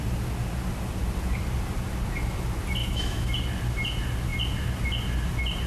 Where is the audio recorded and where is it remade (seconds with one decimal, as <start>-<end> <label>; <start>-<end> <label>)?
0.0-2.8 recorded; 2.8-3.3 remade; 3.3-5.7 recorded